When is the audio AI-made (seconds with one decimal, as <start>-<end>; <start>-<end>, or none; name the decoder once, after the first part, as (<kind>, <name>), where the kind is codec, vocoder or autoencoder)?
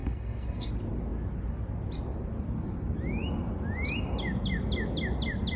0.0-0.7 (codec, SNAC)